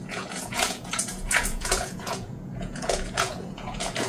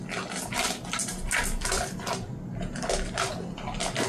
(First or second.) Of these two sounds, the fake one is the first